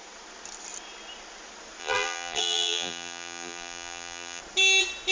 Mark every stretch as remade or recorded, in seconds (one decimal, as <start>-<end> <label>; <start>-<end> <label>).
0.0-1.8 recorded; 1.8-4.4 remade; 4.4-5.1 recorded